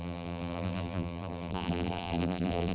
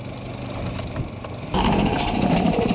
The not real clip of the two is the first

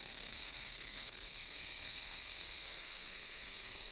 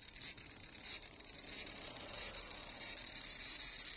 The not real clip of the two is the first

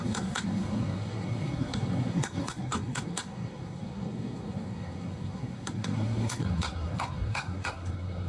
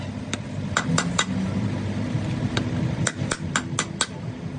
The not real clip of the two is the first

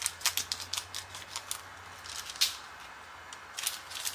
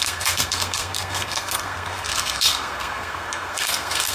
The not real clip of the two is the second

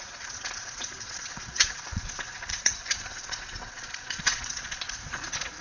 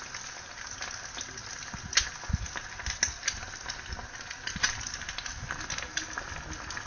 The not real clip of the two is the first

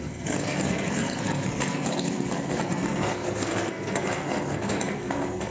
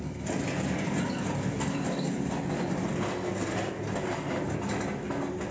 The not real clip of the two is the first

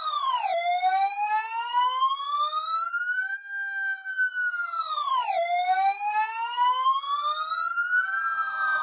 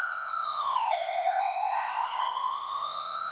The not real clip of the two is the second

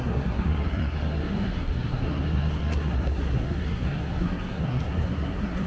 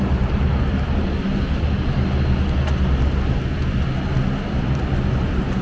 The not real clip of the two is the first